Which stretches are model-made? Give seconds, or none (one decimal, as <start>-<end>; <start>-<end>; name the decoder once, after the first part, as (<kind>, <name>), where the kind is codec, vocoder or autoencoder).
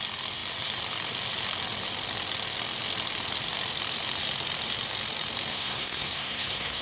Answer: 5.5-6.8 (codec, SNAC)